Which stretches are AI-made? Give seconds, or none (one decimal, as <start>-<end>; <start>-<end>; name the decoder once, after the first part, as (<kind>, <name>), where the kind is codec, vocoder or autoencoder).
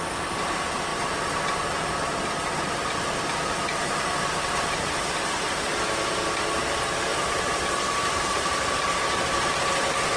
0.9-5.6 (vocoder, BigVGAN v2); 7.1-8.3